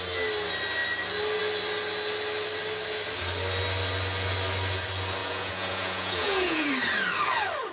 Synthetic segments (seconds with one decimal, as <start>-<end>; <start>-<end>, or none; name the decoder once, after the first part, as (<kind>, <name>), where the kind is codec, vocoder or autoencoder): 5.2-6.7 (vocoder, Vocos)